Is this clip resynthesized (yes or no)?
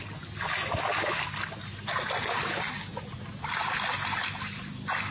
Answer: no